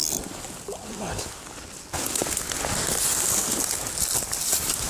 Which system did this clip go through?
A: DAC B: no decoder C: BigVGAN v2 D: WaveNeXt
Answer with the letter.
B